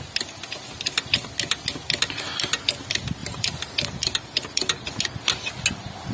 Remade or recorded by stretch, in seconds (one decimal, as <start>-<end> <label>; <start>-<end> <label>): 0.0-3.2 recorded; 3.2-5.0 remade; 5.0-6.1 recorded